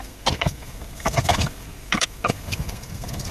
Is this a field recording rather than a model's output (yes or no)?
no